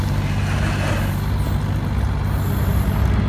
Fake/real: real